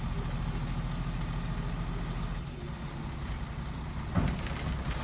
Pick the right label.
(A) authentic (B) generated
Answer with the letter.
A